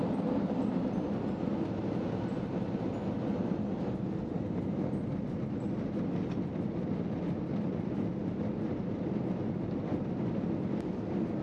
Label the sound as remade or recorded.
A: recorded